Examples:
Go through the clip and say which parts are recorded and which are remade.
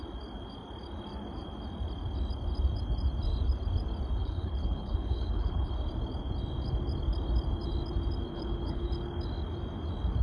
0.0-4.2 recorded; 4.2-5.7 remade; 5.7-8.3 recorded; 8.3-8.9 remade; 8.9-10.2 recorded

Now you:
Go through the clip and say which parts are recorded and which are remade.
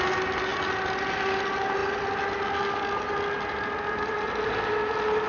0.0-5.3 recorded